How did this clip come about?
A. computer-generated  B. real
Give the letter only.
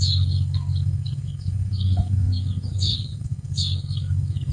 A